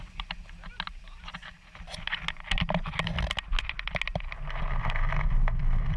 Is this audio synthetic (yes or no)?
no